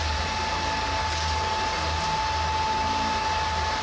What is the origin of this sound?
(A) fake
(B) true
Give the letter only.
B